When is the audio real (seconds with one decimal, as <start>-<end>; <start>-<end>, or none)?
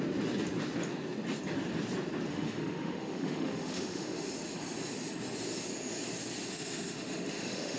0.0-2.3; 4.3-6.5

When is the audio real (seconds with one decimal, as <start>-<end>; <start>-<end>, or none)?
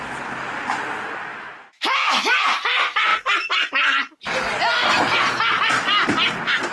0.0-1.3; 2.2-6.7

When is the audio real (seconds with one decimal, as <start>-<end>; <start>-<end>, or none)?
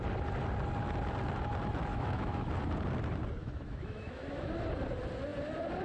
0.0-1.9; 2.5-3.4; 4.5-5.8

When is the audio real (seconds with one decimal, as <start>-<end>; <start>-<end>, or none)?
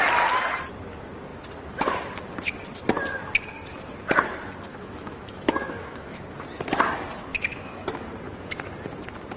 0.0-4.7; 6.2-7.3; 7.8-9.4